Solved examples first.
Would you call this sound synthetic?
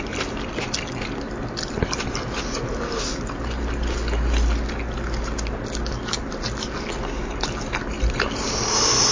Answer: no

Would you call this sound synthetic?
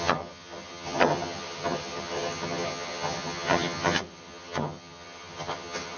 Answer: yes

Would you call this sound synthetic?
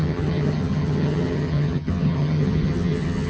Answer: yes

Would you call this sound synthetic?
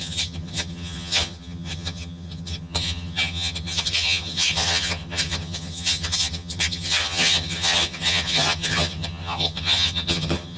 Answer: yes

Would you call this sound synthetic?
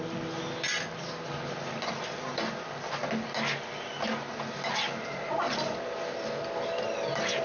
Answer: no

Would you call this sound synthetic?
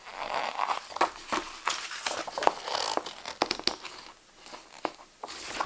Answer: no